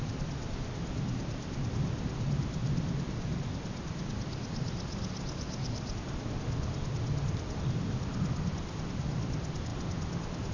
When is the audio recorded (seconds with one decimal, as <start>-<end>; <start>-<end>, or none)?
0.0-10.5

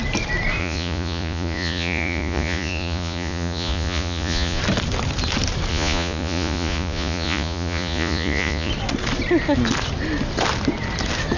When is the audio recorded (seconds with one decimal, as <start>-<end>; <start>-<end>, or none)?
0.0-0.6; 4.6-5.7; 8.7-11.4

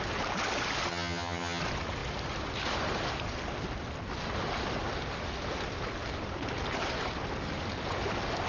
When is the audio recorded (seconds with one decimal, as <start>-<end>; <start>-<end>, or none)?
0.0-0.9; 1.6-8.5

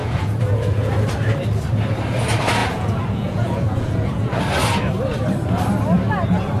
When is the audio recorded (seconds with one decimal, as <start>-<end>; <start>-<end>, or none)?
0.9-2.6; 4.4-6.6

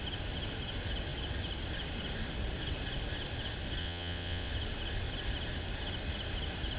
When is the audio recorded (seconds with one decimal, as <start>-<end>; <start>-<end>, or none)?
0.0-3.8; 4.5-6.8

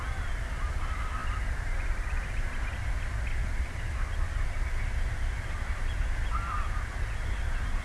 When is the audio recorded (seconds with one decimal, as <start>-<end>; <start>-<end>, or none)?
0.0-7.8

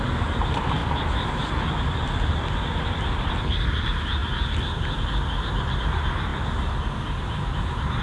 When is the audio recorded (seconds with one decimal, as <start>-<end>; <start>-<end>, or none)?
0.8-1.6; 4.2-5.8; 6.3-8.0